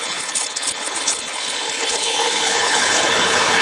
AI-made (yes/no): yes